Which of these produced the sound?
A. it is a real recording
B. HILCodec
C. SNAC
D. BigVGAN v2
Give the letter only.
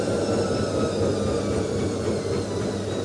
A